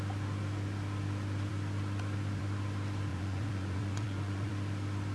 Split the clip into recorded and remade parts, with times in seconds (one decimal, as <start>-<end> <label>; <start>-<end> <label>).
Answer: 0.0-3.1 recorded; 3.1-4.5 remade; 4.5-5.1 recorded